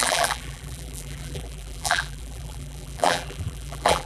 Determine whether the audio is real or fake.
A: fake